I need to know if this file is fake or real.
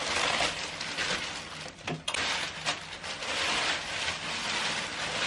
real